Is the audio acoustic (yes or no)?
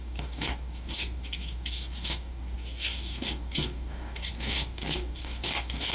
no